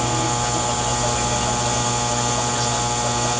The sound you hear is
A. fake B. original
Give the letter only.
B